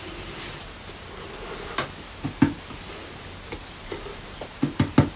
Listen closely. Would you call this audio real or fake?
real